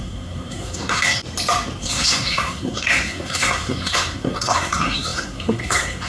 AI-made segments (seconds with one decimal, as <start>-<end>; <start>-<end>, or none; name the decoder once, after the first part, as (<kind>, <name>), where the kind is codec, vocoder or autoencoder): 0.0-1.2 (codec, SNAC); 1.8-6.1